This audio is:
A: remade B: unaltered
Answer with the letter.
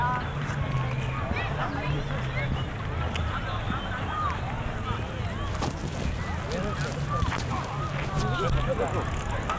B